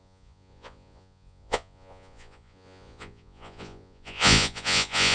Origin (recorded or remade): remade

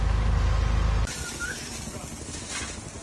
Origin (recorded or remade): recorded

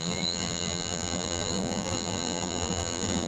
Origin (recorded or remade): remade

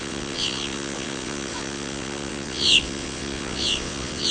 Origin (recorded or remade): remade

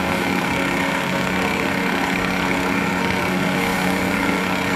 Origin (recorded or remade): remade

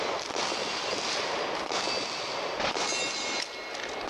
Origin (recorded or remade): recorded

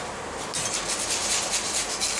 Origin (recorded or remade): recorded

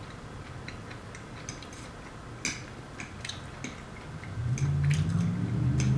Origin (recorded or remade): recorded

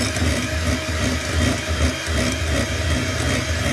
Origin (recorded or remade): recorded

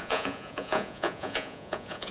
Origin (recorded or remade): remade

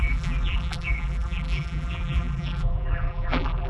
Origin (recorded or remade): remade